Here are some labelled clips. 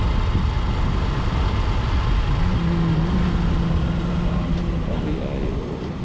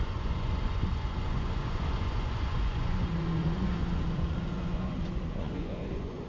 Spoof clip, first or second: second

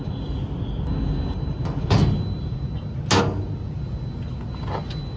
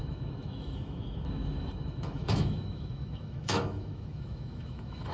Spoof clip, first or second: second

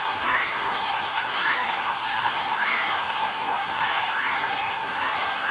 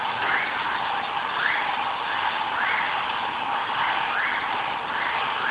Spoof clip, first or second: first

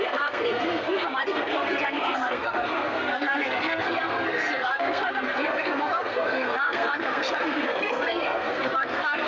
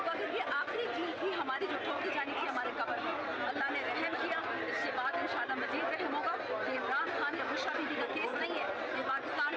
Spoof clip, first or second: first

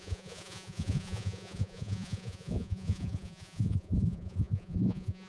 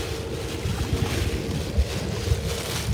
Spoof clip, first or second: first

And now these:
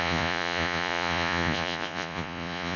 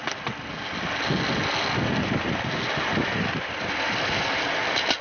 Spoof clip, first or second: first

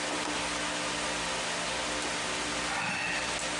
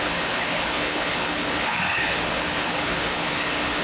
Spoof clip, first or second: second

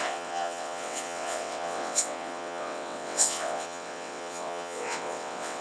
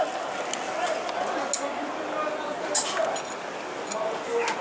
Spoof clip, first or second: first